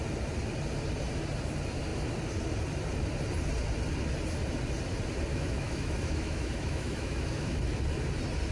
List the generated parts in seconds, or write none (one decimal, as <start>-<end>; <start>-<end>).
5.3-7.6